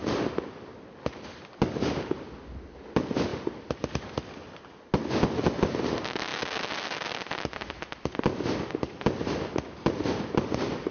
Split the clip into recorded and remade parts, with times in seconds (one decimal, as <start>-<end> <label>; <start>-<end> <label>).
0.0-10.9 recorded